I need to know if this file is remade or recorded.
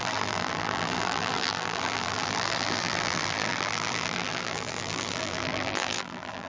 remade